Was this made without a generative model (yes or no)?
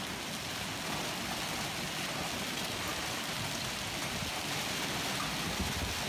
yes